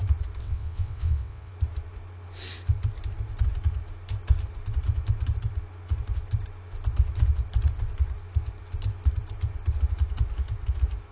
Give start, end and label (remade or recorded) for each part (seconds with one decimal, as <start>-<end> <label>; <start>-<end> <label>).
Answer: 0.0-0.4 recorded; 0.4-1.5 remade; 1.5-11.1 recorded